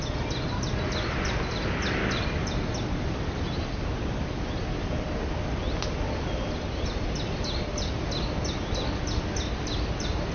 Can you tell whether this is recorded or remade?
recorded